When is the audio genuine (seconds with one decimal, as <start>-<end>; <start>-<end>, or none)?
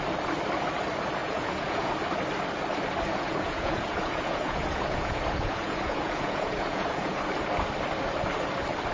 0.0-1.2; 1.9-3.1; 7.3-8.9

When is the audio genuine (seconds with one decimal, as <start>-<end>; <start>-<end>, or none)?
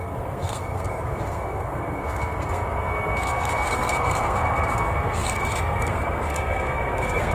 none